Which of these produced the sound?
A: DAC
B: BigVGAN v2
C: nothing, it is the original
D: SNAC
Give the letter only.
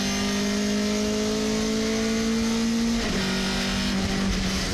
C